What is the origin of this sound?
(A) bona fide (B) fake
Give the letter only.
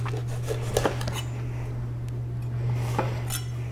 A